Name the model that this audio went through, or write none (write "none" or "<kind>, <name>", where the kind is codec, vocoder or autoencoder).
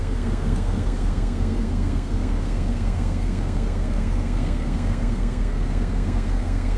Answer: codec, SNAC